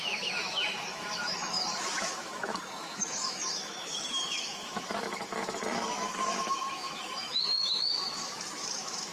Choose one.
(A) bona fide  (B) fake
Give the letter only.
B